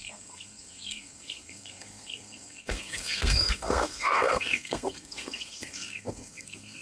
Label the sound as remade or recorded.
remade